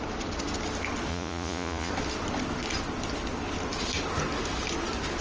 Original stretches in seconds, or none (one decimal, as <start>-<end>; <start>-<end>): 0.0-1.1; 1.9-5.2